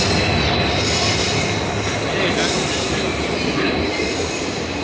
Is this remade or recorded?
recorded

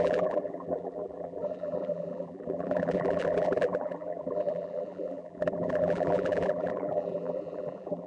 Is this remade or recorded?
remade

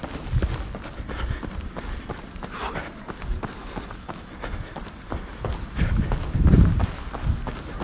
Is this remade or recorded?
recorded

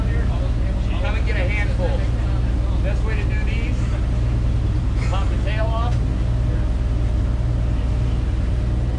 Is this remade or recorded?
recorded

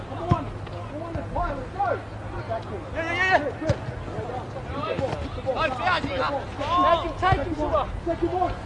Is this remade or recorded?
recorded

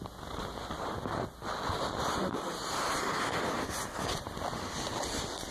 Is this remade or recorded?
recorded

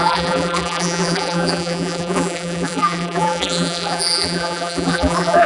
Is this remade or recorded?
remade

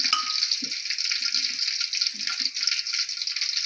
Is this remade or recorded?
recorded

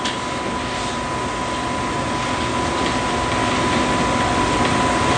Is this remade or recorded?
recorded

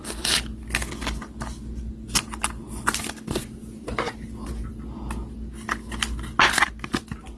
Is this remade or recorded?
recorded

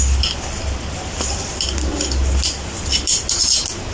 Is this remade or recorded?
recorded